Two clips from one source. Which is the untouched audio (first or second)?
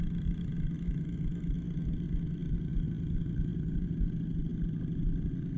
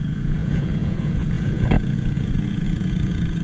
first